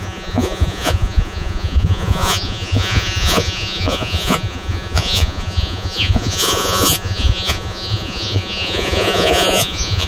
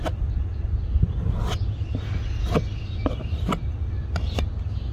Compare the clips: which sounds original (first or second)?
second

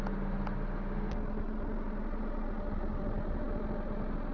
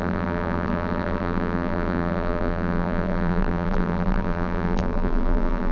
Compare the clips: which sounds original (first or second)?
first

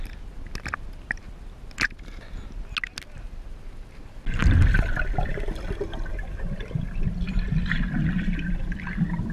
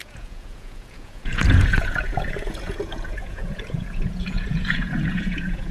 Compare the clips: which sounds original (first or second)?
first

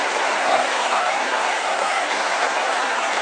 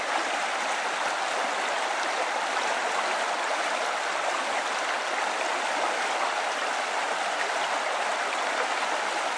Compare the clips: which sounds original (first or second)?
second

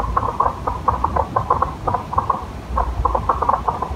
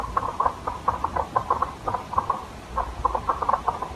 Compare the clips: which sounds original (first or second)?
first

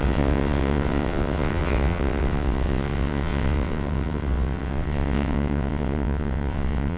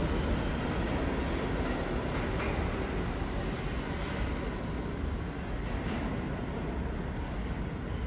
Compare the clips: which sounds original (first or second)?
second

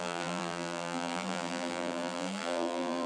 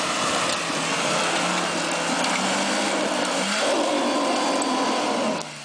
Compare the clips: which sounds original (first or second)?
second